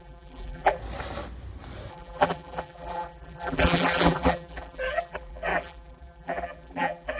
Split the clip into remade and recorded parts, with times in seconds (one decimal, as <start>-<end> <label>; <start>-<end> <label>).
0.0-0.8 remade; 0.8-1.9 recorded; 1.9-7.2 remade